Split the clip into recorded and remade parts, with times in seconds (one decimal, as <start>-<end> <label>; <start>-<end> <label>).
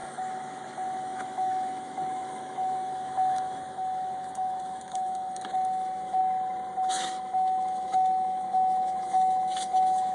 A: 0.0-6.2 remade; 6.2-6.9 recorded; 6.9-10.1 remade